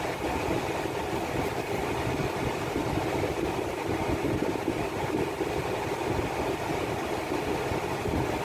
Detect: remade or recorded recorded